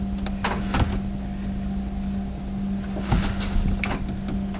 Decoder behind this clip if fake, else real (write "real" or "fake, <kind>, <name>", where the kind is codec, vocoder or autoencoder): real